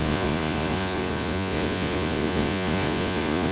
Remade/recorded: remade